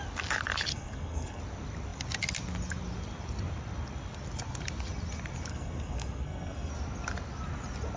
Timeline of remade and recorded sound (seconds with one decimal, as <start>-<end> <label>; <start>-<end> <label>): 0.0-0.7 recorded; 0.7-1.4 remade; 1.4-5.5 recorded; 5.5-6.7 remade; 6.7-8.0 recorded